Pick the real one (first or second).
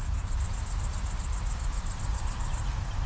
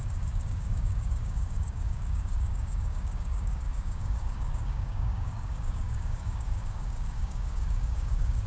first